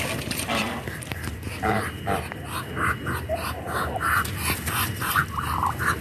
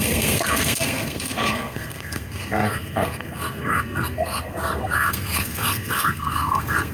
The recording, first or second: first